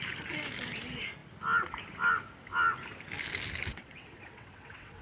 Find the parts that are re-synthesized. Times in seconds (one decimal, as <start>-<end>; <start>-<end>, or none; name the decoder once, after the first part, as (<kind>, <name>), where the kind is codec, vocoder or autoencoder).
3.7-5.0 (vocoder, WaveNeXt)